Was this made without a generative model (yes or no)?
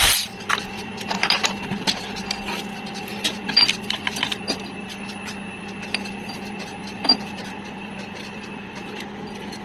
yes